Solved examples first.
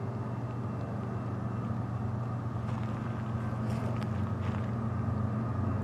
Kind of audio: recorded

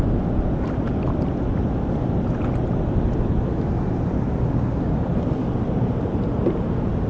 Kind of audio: recorded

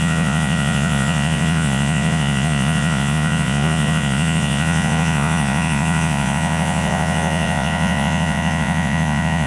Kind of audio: remade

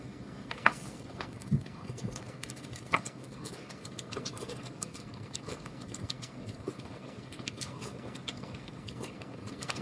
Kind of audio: remade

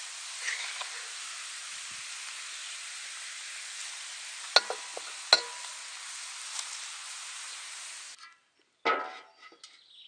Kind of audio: recorded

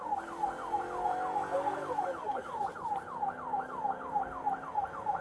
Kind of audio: recorded